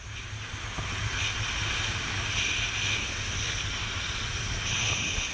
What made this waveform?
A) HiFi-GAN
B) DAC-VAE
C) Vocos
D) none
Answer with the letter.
D